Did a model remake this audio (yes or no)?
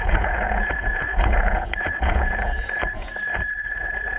yes